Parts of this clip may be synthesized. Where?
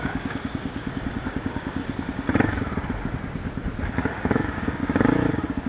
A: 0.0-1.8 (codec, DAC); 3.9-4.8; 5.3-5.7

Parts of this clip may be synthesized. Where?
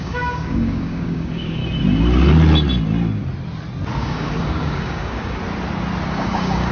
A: 0.0-1.6 (codec, DAC); 4.0-5.4; 6.1-6.7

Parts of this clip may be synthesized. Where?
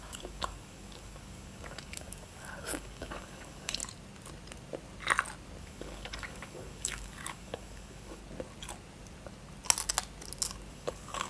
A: 0.0-3.8 (codec, DAC); 5.6-8.2; 10.7-11.3